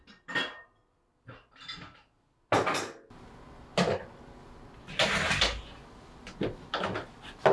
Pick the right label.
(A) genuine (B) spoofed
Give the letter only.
A